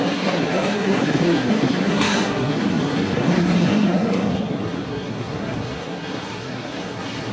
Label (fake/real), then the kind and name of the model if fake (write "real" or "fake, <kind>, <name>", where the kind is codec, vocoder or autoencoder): fake, codec, SNAC